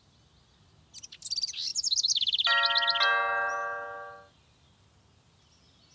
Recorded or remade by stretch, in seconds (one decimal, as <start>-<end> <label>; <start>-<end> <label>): 0.0-5.9 recorded